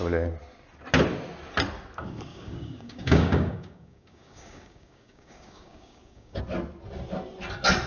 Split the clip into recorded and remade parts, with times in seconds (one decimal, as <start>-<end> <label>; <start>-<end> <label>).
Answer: 0.0-2.3 recorded; 2.3-6.4 remade; 6.4-7.9 recorded